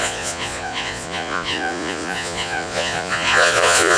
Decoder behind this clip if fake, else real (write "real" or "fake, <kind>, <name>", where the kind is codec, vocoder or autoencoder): fake, vocoder, Vocos